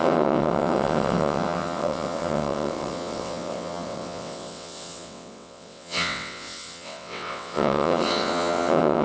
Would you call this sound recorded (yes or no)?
no